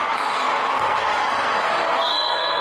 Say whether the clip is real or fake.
fake